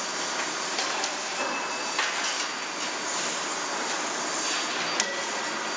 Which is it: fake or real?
real